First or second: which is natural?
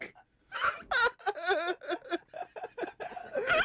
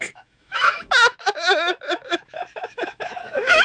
first